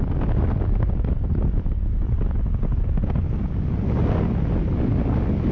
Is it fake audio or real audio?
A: real